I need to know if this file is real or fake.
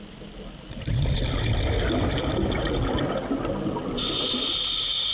real